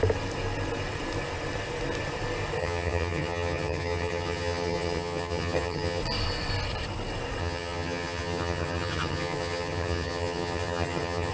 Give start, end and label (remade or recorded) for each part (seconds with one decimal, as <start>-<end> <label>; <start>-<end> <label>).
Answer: 0.0-2.6 recorded; 2.6-6.0 remade; 6.0-7.4 recorded; 7.4-11.3 remade